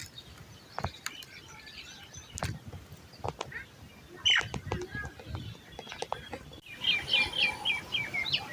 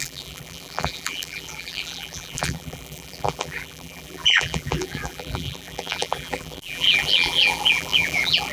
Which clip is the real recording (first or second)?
first